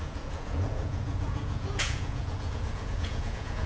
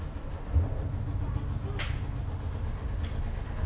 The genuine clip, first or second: second